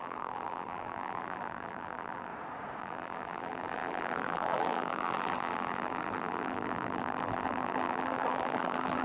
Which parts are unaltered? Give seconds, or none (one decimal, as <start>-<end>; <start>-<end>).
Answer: 2.3-2.8